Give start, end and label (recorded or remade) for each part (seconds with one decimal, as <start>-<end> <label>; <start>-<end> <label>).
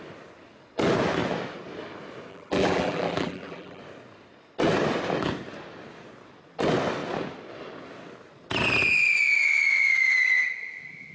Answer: 0.0-2.3 recorded; 2.3-3.8 remade; 3.8-11.1 recorded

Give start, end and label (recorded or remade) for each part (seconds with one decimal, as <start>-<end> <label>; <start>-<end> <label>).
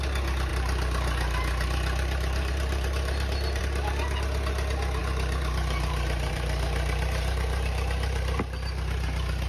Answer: 0.0-0.5 recorded; 0.5-3.6 remade; 3.6-5.0 recorded; 5.0-9.5 remade